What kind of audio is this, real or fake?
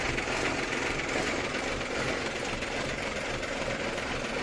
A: fake